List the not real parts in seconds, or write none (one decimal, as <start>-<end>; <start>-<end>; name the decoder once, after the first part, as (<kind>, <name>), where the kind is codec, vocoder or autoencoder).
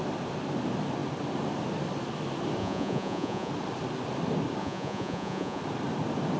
2.6-3.5 (vocoder, Vocos); 4.6-5.6